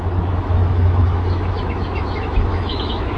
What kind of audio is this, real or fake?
fake